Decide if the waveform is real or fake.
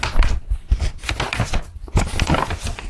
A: real